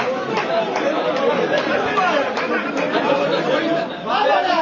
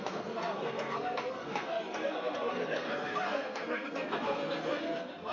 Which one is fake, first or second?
second